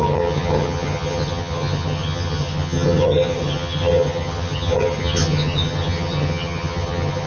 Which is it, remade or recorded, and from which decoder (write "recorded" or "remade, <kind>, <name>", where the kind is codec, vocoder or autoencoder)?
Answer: remade, vocoder, HiFi-GAN